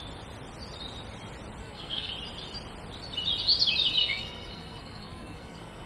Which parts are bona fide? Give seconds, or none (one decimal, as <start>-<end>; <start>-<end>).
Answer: 0.0-1.6; 2.1-4.0